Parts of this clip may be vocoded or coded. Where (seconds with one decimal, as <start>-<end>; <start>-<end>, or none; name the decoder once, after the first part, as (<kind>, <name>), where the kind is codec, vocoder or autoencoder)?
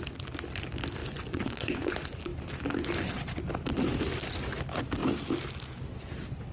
1.0-1.9 (vocoder, Vocos)